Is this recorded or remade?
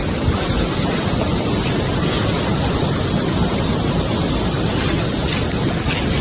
recorded